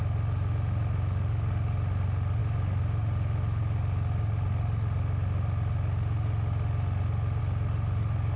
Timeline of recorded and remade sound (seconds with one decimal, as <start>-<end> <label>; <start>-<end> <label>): 0.0-8.4 recorded